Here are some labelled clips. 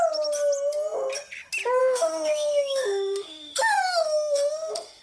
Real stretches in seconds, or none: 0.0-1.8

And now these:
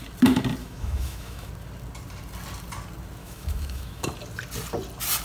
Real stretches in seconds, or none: 0.0-0.6; 1.5-3.2; 4.1-5.2

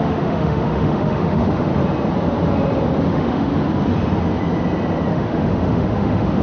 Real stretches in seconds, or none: 1.7-3.1; 3.5-5.1

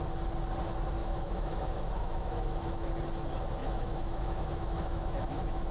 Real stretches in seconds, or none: 0.0-1.0; 2.9-3.6

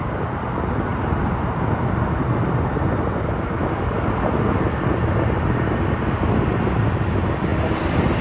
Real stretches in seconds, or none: 0.0-8.2

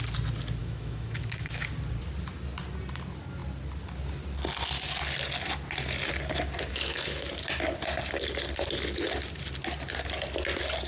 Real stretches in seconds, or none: 0.0-0.6; 1.7-6.7; 7.3-10.9

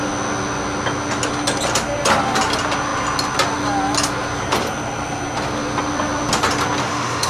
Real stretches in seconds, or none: 0.0-6.8